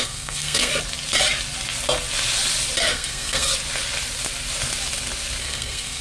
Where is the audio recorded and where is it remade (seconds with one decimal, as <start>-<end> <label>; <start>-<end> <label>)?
0.0-0.7 remade; 0.7-2.8 recorded; 2.8-3.5 remade; 3.5-5.4 recorded; 5.4-6.0 remade